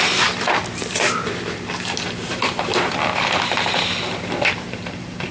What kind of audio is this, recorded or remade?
recorded